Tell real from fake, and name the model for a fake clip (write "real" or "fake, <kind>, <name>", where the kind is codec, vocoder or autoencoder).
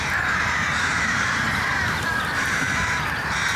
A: fake, vocoder, BigVGAN v2